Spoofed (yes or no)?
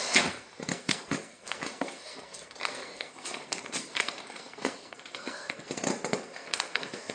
yes